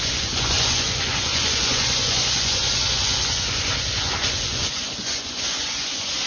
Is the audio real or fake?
fake